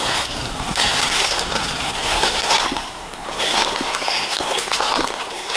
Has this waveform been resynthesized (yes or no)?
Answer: yes